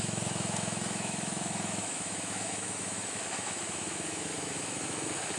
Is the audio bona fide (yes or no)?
no